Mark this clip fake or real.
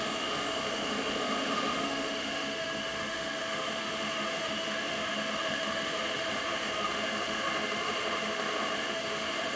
fake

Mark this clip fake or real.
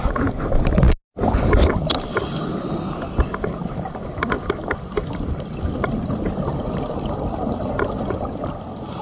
real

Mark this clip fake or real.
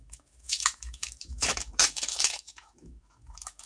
fake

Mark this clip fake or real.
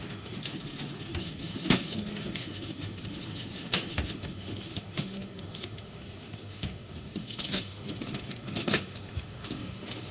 fake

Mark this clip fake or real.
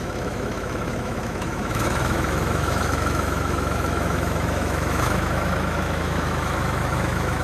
fake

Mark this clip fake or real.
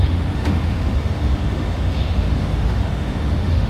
fake